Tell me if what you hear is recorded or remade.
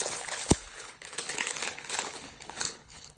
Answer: remade